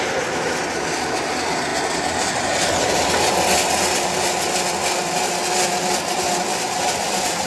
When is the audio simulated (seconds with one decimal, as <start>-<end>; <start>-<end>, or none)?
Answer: none